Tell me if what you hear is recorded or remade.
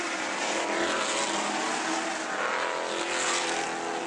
recorded